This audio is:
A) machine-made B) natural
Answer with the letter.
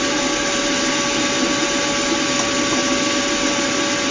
B